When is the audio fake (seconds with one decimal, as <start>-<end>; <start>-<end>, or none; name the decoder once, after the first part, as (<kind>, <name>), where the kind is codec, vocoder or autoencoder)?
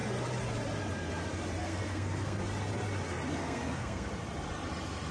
1.6-2.4 (codec, SNAC); 3.4-4.1